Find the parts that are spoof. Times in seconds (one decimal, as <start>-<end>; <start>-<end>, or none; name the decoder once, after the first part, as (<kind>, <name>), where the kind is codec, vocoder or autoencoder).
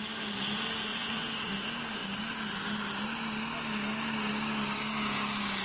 0.9-1.5 (vocoder, WaveNeXt)